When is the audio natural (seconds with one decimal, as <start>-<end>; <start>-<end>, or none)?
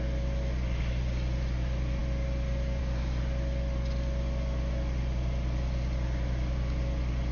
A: 0.0-7.3